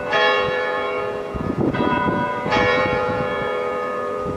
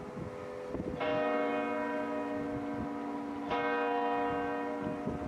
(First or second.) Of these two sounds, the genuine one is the second